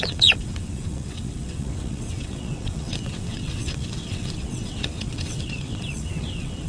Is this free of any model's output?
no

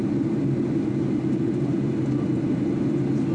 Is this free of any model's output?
yes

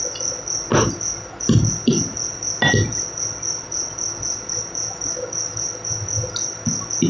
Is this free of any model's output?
yes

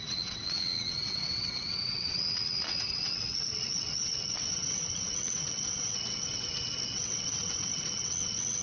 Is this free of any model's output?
no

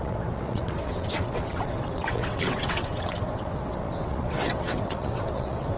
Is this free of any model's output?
no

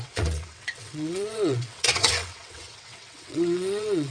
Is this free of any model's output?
no